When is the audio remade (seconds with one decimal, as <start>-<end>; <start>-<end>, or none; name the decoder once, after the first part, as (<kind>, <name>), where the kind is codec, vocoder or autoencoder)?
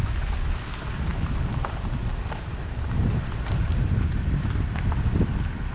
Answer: 1.1-4.5 (vocoder, BigVGAN v2)